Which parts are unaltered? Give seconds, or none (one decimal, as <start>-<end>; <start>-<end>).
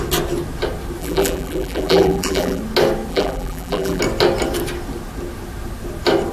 0.0-1.0; 2.6-3.1; 4.0-6.3